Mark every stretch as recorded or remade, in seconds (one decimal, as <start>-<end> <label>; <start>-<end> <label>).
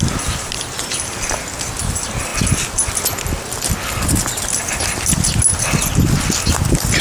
0.0-7.0 recorded